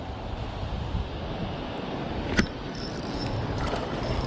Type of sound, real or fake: real